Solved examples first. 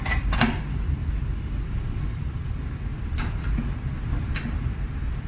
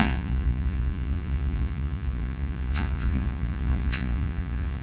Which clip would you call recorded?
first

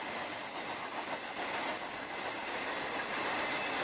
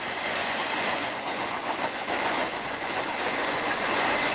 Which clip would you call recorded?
first